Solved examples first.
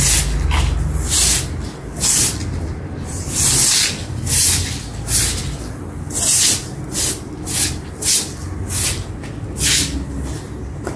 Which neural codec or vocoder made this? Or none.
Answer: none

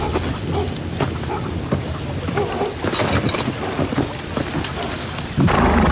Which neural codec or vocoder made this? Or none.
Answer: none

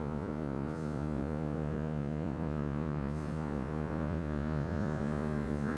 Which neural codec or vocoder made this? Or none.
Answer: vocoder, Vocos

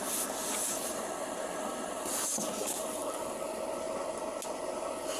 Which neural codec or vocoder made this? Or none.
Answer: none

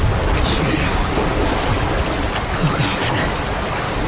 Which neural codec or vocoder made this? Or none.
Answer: none